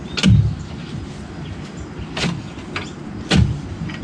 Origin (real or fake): real